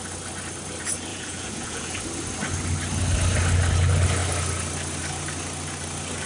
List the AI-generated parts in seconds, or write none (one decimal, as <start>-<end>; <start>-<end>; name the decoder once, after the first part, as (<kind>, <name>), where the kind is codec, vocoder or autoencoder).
1.1-2.0 (vocoder, Vocos)